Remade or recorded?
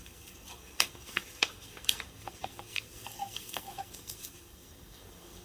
remade